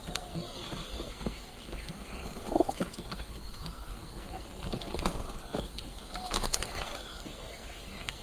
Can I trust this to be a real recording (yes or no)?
no